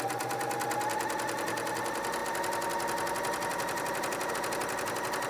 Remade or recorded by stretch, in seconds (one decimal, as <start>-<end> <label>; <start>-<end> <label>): 0.0-2.2 recorded; 2.2-4.3 remade; 4.3-5.3 recorded